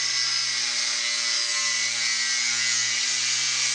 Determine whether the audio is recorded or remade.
recorded